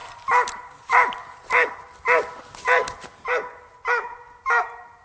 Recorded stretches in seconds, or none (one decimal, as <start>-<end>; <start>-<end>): 1.7-2.8; 3.4-5.0

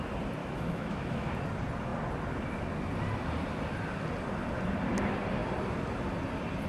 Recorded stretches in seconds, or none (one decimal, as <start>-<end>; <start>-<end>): 0.0-0.4; 1.3-6.7

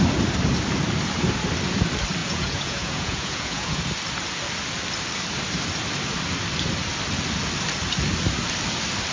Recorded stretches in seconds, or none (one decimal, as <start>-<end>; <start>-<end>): 0.0-2.2; 3.8-9.1